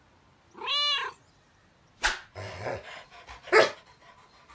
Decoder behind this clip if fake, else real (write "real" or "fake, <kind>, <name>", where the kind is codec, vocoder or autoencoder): real